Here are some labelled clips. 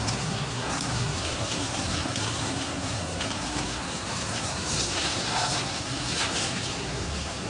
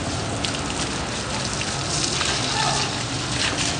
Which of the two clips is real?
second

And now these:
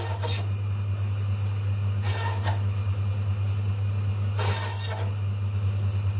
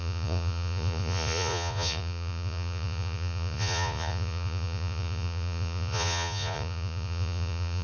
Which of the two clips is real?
first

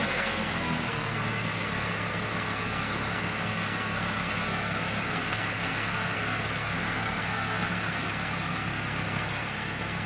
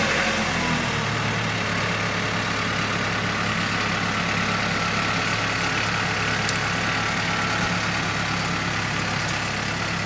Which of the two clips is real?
second